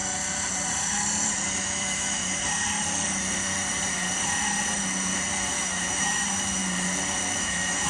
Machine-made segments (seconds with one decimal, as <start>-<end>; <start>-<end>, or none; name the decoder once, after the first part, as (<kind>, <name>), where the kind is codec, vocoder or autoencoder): 1.6-2.4 (autoencoder, DAC-VAE); 5.5-6.6; 7.4-7.9